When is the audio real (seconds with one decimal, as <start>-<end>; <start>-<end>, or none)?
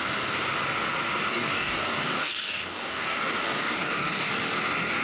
0.0-1.3; 4.3-5.0